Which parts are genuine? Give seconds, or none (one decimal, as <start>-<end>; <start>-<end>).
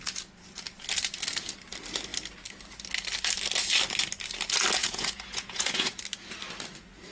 0.0-4.8; 6.0-7.1